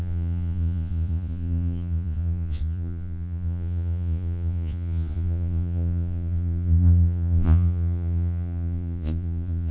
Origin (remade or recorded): remade